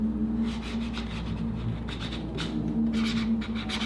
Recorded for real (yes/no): yes